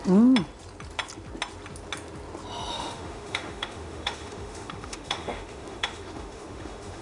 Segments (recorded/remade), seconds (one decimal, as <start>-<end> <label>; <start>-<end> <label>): 0.0-2.7 recorded; 2.7-7.0 remade